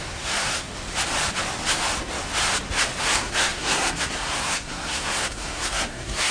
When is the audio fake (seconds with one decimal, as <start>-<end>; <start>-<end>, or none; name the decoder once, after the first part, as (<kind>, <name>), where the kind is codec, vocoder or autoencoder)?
0.0-0.7 (codec, SNAC); 3.0-6.3